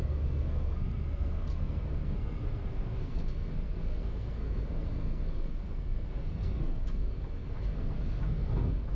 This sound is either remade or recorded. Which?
remade